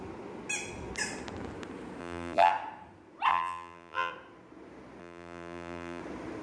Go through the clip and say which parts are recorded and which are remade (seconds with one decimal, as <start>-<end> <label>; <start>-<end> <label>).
0.0-2.0 recorded; 2.0-2.5 remade; 2.5-3.3 recorded; 3.3-4.1 remade; 4.1-5.0 recorded; 5.0-6.0 remade; 6.0-6.4 recorded